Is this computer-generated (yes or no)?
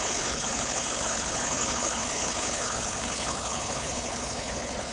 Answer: yes